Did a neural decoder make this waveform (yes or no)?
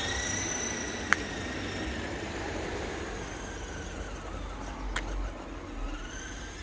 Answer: no